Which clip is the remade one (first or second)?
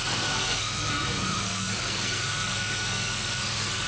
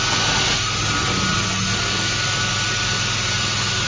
first